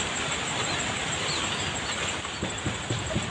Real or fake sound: real